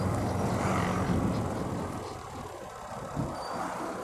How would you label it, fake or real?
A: real